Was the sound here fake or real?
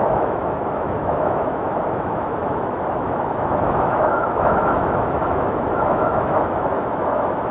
fake